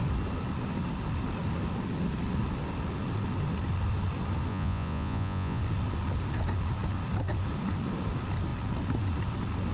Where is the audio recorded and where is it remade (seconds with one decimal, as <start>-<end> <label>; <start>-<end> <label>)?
0.0-4.5 recorded; 4.5-5.6 remade; 5.6-9.7 recorded

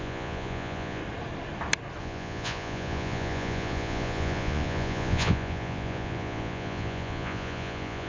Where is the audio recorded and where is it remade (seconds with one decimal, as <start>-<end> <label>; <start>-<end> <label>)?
0.0-1.0 remade; 1.0-2.0 recorded; 2.0-8.1 remade